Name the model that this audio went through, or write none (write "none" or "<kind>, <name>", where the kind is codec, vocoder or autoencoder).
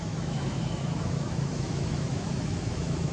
autoencoder, DAC-VAE